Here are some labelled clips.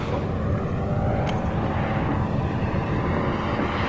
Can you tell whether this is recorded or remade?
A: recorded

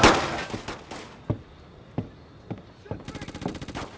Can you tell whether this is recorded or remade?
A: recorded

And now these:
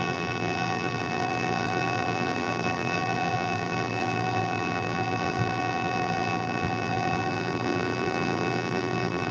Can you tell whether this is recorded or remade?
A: remade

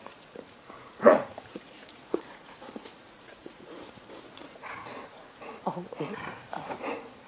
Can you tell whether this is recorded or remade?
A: remade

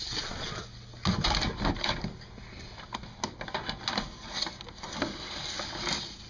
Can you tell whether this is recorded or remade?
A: recorded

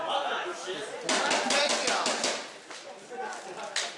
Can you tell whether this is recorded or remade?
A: recorded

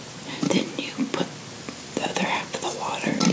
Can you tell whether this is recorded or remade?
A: recorded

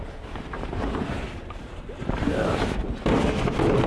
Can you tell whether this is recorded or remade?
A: recorded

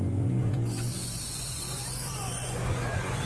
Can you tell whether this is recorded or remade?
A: remade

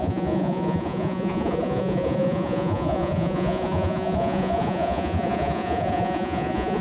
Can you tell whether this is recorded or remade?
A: remade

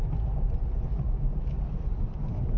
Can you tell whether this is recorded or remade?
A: recorded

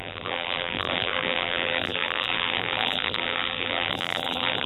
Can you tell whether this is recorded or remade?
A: remade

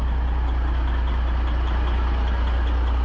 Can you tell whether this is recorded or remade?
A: recorded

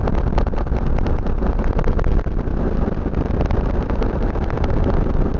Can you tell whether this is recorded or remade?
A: recorded